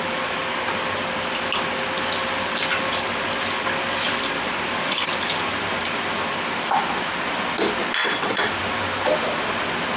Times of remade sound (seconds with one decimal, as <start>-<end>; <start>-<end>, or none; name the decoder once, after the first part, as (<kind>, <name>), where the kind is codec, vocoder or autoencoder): 8.0-8.5 (vocoder, WaveNeXt)